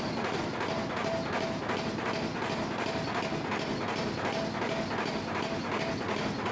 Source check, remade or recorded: recorded